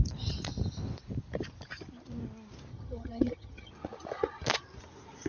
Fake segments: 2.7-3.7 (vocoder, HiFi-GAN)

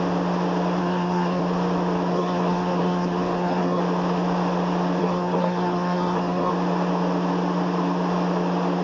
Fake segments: 0.8-1.4 (codec, SNAC); 2.1-3.8; 5.0-6.5

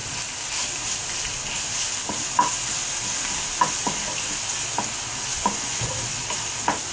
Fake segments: 5.3-5.9 (vocoder, Vocos)

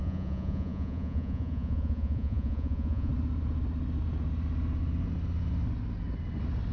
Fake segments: 0.0-3.1 (vocoder, Vocos)